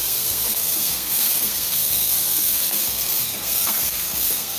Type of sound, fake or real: fake